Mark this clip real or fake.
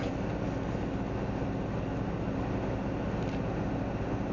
real